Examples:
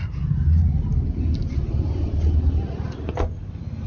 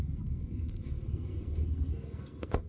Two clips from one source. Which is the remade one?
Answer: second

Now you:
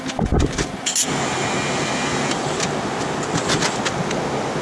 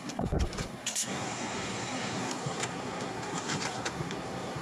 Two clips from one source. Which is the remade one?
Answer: second